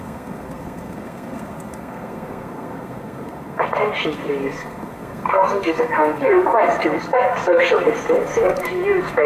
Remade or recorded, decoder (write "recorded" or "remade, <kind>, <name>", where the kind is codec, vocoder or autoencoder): remade, codec, SNAC